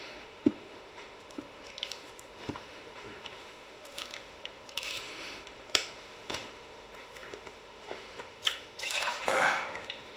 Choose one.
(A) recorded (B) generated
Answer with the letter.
B